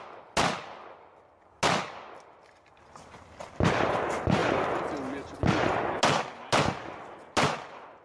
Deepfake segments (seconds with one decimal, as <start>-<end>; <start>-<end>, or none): none

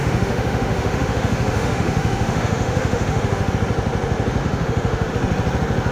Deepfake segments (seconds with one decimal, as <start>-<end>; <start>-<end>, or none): 0.0-3.5; 4.4-5.1

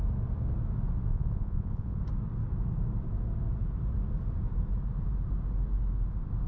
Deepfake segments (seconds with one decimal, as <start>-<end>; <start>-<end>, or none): 1.1-2.0

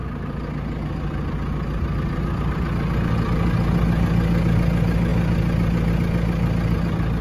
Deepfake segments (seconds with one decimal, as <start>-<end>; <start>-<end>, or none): none

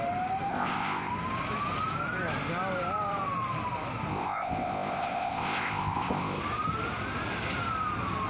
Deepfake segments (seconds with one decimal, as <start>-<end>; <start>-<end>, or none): 0.5-1.1; 4.1-6.4

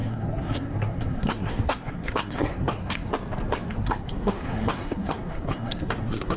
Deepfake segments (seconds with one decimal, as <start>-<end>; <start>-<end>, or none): 0.0-3.1; 3.7-6.4

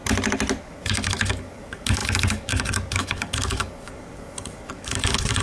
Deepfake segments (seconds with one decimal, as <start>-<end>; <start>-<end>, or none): 0.6-5.4

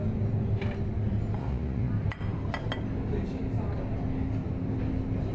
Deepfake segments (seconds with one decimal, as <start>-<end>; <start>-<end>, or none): 1.4-1.9